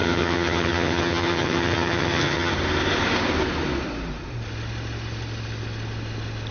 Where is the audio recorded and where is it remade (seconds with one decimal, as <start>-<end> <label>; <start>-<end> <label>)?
0.0-2.5 remade; 2.5-6.5 recorded